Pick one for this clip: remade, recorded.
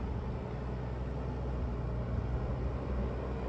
recorded